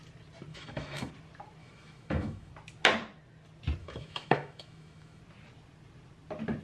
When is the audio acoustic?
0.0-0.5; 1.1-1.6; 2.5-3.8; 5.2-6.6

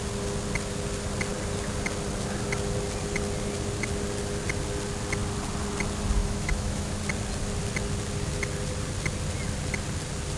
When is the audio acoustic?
0.0-6.2; 7.0-10.4

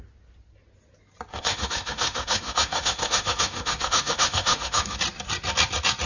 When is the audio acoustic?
0.0-1.3; 5.0-6.1

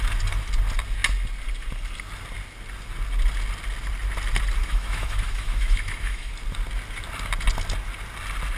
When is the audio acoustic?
0.0-4.6; 6.3-8.6

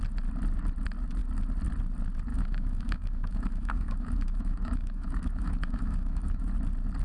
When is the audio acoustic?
0.0-2.3; 6.5-7.0